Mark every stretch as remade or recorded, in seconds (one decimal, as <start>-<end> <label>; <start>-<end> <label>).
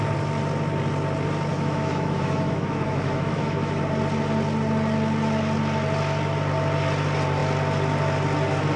0.0-1.5 recorded; 1.5-3.8 remade; 3.8-8.8 recorded